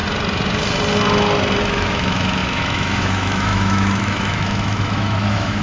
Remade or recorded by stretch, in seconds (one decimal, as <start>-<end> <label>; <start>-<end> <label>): 0.0-1.6 recorded; 1.6-5.6 remade